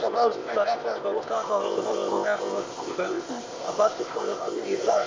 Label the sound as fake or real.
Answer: fake